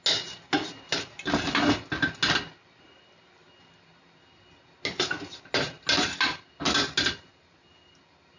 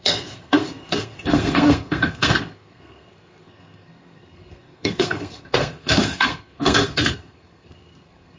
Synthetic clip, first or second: second